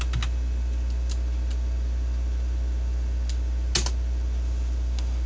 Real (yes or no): yes